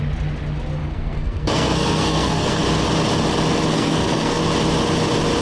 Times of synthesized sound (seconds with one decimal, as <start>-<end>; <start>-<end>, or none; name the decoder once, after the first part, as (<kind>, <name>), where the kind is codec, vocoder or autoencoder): 0.8-2.6 (codec, SNAC); 3.7-4.4